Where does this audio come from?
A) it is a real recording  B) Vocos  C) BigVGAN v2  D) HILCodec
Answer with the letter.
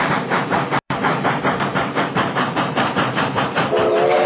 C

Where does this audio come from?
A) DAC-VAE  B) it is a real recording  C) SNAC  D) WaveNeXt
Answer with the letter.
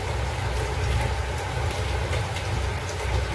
B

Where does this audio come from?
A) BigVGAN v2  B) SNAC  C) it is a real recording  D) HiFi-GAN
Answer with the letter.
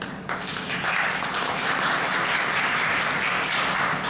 C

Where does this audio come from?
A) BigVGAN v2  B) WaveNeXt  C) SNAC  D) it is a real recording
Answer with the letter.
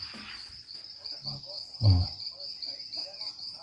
D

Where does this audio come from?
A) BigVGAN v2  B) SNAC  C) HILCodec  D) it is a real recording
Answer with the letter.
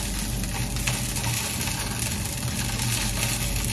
D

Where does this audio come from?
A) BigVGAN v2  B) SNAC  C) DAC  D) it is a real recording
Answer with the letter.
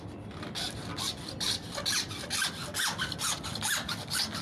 D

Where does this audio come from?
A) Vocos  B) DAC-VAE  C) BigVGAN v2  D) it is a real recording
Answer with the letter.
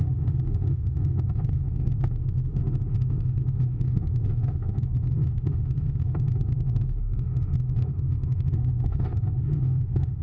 B